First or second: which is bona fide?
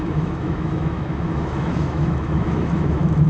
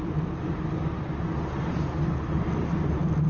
second